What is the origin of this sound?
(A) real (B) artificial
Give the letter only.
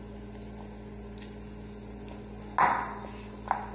A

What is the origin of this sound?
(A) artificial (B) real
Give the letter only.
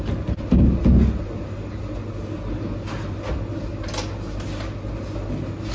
B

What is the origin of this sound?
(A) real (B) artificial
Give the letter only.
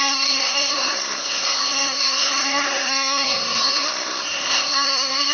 B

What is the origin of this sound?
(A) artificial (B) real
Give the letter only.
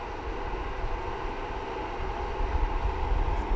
B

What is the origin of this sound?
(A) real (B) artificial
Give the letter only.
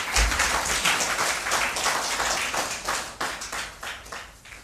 A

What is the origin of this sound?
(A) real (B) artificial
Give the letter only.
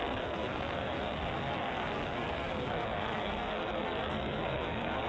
B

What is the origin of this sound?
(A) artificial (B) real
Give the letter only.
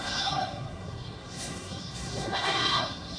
A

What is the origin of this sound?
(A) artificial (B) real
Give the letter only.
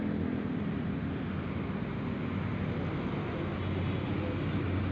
B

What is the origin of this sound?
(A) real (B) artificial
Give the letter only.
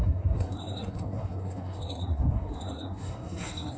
B